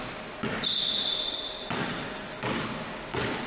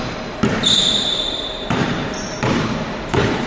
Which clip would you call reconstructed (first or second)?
second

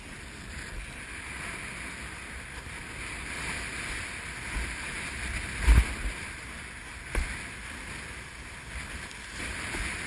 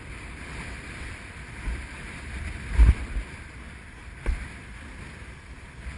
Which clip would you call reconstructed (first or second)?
second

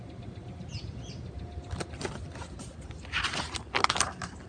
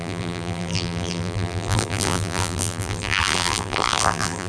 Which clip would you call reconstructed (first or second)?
second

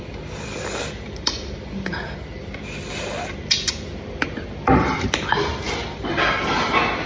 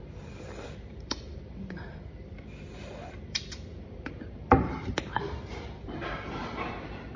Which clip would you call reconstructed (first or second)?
second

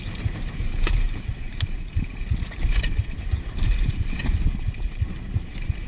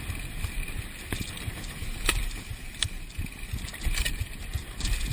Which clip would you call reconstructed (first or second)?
first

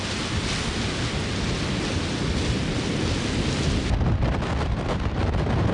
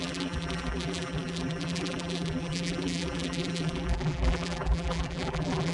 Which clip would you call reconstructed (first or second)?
second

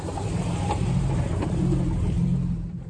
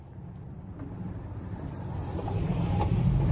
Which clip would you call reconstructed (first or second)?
second